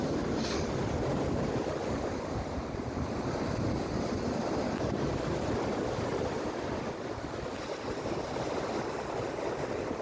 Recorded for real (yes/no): yes